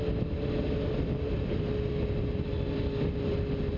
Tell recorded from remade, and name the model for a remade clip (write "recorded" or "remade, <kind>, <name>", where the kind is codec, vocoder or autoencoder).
recorded